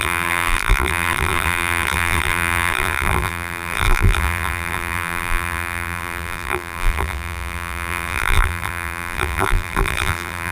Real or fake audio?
fake